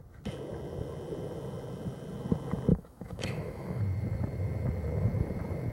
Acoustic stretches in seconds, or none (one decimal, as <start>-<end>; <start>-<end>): 0.0-2.7; 3.8-5.7